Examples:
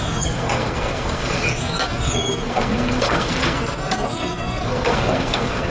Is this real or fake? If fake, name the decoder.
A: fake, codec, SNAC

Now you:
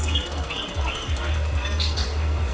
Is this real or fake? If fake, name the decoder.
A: fake, codec, SNAC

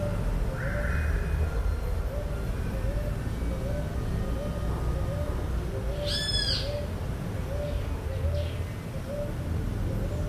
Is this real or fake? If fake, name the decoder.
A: real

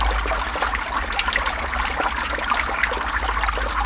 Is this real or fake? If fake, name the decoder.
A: real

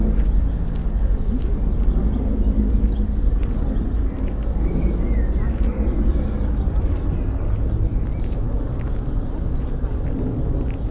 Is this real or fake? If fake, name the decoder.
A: real